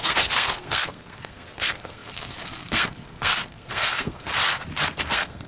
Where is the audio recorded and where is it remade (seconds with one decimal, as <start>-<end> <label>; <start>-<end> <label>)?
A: 0.0-4.3 remade; 4.3-5.0 recorded; 5.0-5.5 remade